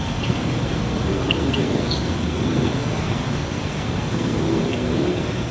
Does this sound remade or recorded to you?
remade